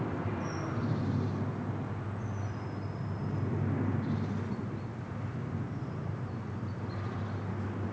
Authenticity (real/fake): real